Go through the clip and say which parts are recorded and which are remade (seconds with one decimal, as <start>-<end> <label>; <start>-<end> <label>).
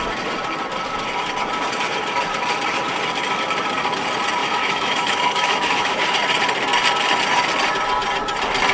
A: 0.0-4.4 recorded; 4.4-6.0 remade; 6.0-8.7 recorded